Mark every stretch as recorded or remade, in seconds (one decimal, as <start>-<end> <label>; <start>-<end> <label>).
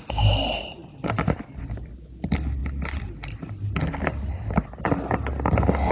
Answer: 0.0-5.9 recorded